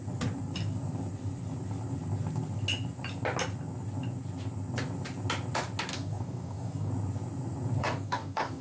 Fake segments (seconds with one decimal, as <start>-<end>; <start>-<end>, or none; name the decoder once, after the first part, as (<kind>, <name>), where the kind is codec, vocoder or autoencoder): 5.9-6.9 (codec, DAC); 7.8-8.6